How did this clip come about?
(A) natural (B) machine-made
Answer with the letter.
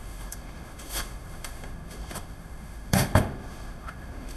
B